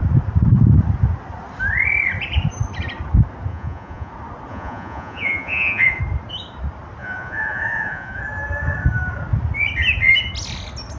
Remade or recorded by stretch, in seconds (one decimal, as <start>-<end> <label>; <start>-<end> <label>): 0.0-3.5 recorded; 3.5-4.1 remade; 4.1-4.5 recorded; 4.5-6.0 remade; 6.0-7.0 recorded; 7.0-8.2 remade; 8.2-11.0 recorded